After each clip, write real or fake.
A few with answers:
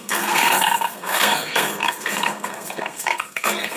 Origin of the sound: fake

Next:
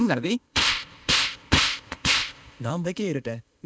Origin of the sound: fake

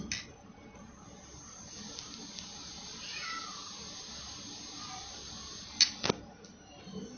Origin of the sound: real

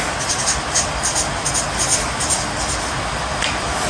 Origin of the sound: real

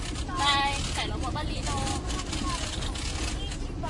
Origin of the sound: real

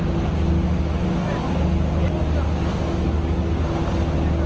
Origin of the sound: real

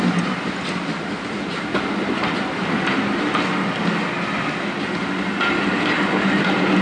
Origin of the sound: real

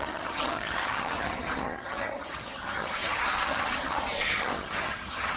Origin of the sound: fake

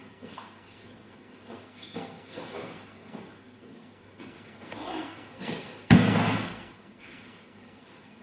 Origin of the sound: fake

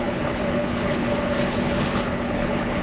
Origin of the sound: fake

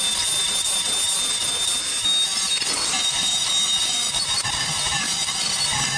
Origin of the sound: real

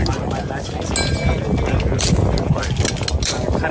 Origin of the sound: real